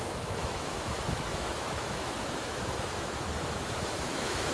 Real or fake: fake